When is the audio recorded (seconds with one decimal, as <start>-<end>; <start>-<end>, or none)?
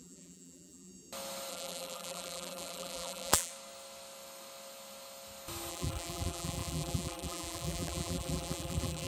0.9-1.5; 3.5-5.7